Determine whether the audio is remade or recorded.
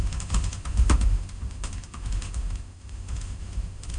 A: remade